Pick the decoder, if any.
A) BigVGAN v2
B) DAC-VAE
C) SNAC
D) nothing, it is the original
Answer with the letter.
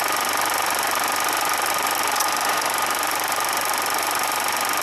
D